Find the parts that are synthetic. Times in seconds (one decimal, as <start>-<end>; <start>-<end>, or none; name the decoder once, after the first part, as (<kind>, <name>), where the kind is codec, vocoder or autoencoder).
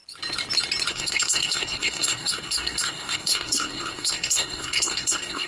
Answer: 0.9-5.5 (codec, SNAC)